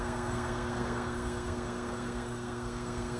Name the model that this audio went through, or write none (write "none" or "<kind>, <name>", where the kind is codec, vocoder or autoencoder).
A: codec, SNAC